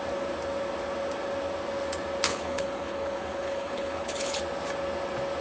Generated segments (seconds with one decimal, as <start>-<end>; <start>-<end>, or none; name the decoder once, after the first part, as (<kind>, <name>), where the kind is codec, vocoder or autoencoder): 2.3-4.4 (codec, HILCodec)